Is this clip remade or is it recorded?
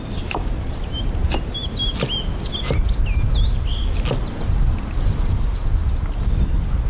recorded